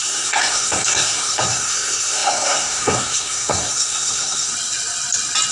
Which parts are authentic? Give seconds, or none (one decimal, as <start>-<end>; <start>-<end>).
4.5-5.5